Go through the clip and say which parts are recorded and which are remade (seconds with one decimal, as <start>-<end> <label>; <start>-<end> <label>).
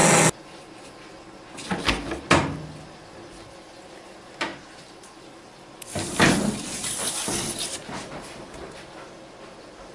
0.0-3.9 recorded; 3.9-4.5 remade; 4.5-5.2 recorded; 5.2-7.8 remade; 7.8-9.9 recorded